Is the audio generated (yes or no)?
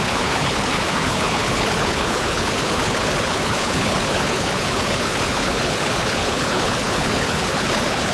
yes